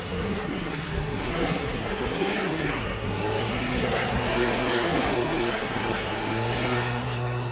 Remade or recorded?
remade